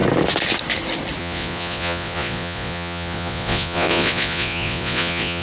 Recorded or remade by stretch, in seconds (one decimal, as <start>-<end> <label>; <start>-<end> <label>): 0.0-1.2 recorded; 1.2-5.4 remade